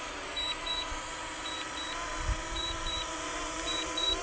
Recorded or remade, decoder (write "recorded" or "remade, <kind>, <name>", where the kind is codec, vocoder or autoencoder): remade, vocoder, BigVGAN v2